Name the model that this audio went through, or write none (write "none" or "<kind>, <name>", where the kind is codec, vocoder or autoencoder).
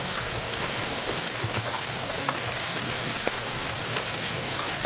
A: codec, DAC